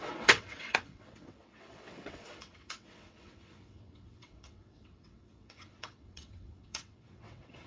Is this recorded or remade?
remade